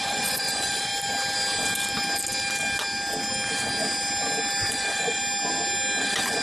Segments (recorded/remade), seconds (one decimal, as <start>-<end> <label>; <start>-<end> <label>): 0.0-0.9 remade; 0.9-4.7 recorded; 4.7-5.2 remade; 5.2-6.0 recorded; 6.0-6.4 remade